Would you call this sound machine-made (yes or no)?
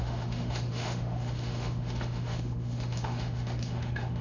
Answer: yes